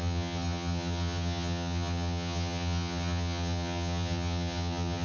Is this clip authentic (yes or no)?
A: no